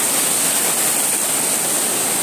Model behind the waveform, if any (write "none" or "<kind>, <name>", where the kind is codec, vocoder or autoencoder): none